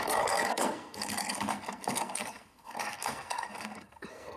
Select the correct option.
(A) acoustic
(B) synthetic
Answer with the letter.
B